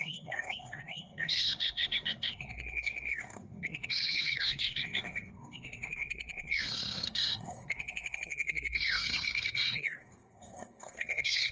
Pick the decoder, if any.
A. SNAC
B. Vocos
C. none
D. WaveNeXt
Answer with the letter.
A